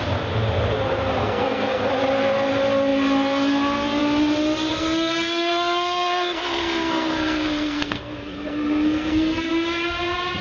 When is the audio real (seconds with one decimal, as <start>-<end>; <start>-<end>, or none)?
0.0-1.2; 1.9-4.7; 9.5-10.4